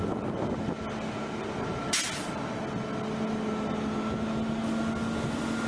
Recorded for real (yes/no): yes